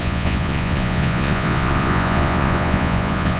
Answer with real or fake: fake